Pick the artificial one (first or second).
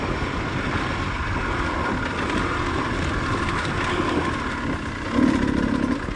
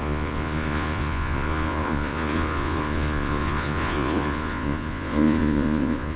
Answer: second